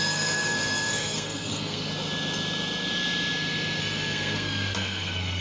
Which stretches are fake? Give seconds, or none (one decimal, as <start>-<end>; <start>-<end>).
0.0-1.8; 3.8-5.4

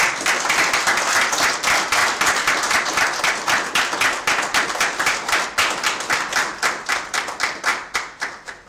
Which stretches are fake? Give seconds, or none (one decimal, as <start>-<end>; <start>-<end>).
none